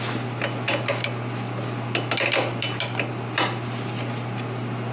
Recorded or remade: recorded